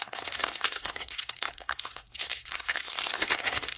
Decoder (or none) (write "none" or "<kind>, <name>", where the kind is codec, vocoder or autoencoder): codec, SNAC